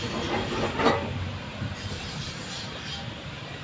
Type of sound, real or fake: fake